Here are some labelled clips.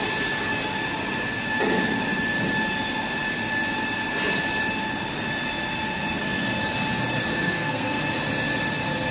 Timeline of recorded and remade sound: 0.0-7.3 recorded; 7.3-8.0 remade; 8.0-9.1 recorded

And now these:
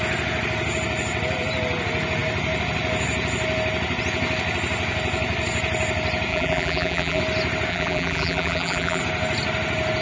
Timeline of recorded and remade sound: 0.0-6.3 recorded; 6.3-7.2 remade; 7.2-7.7 recorded; 7.7-9.0 remade; 9.0-10.0 recorded

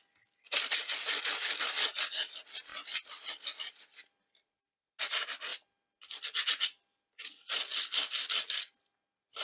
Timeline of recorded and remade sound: 0.0-2.7 recorded; 2.7-5.0 remade; 5.0-5.5 recorded; 5.5-7.5 remade; 7.5-9.4 recorded

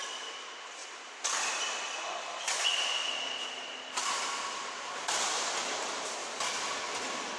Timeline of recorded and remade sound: 0.0-2.7 recorded; 2.7-5.1 remade; 5.1-7.4 recorded

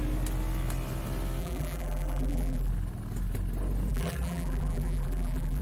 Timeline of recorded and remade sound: 0.0-1.4 recorded; 1.4-2.7 remade; 2.7-3.9 recorded; 3.9-5.6 remade

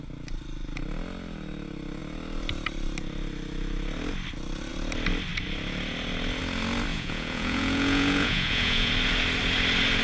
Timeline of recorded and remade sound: 0.0-6.9 recorded; 6.9-8.9 remade; 8.9-10.0 recorded

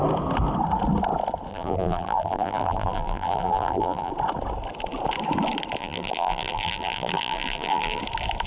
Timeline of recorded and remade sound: 0.0-1.5 recorded; 1.5-4.1 remade; 4.1-5.8 recorded; 5.8-8.0 remade; 8.0-8.5 recorded